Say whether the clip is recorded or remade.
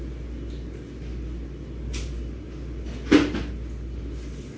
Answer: recorded